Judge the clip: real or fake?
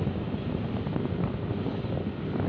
real